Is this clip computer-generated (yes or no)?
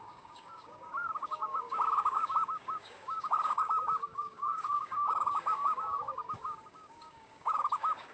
yes